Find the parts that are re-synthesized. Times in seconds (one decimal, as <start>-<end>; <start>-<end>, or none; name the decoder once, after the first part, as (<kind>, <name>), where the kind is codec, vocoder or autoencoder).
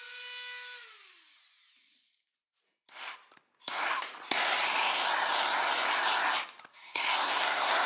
6.7-7.9 (codec, SNAC)